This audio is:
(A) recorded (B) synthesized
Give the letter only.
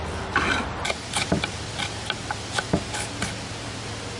A